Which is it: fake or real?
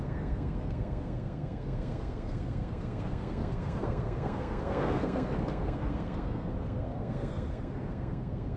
fake